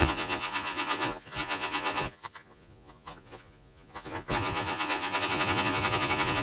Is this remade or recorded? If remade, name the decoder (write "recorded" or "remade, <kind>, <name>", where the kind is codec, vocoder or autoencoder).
remade, vocoder, Vocos